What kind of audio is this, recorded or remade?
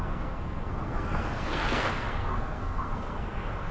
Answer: remade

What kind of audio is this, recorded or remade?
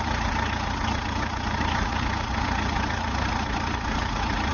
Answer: remade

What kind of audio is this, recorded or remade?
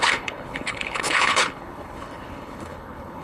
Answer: remade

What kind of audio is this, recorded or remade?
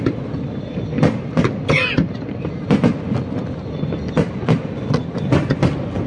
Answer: recorded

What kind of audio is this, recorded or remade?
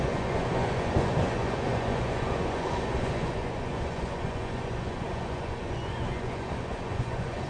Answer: remade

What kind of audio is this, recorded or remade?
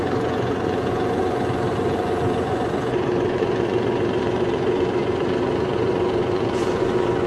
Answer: remade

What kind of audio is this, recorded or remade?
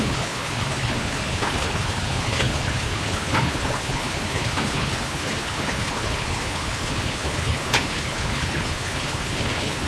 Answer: remade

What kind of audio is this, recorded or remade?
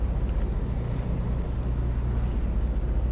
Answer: recorded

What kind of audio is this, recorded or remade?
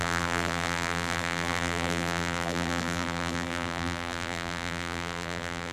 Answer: remade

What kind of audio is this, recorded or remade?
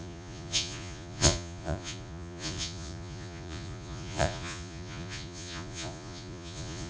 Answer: remade